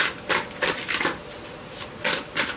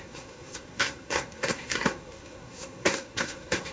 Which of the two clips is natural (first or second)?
first